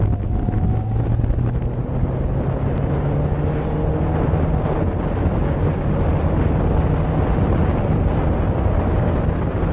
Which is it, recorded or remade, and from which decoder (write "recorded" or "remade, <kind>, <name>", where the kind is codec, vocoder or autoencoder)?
recorded